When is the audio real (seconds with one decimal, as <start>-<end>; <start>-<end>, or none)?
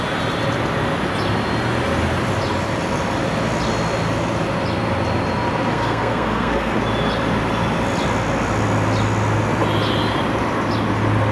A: 0.0-5.7; 6.8-11.3